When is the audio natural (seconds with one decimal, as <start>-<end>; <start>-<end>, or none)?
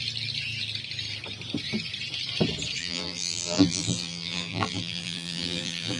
0.0-2.8